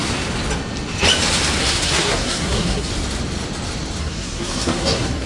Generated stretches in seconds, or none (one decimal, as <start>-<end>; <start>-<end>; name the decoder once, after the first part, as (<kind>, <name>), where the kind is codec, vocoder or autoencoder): 1.6-2.9 (codec, SNAC); 4.0-5.3